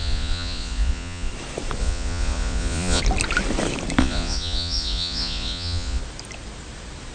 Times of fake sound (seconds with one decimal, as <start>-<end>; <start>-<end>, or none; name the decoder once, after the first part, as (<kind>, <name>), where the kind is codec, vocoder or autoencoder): 0.0-1.3 (vocoder, Vocos); 1.8-3.0; 4.0-6.0